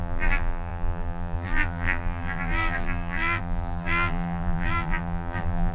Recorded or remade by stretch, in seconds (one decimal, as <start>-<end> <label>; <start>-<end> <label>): 0.0-5.7 remade